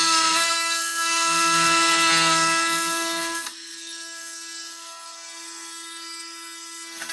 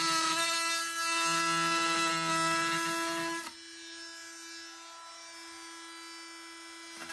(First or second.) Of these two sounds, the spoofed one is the first